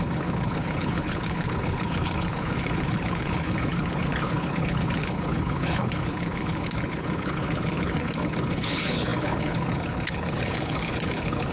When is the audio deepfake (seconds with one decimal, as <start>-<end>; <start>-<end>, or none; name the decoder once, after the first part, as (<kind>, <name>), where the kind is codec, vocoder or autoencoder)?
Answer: 0.0-11.5 (codec, HILCodec)